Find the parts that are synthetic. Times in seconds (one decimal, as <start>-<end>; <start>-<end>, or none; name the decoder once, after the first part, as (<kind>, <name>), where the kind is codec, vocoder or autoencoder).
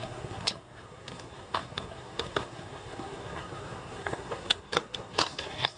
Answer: 0.0-5.8 (codec, SNAC)